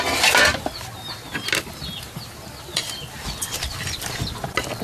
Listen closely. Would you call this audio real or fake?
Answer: real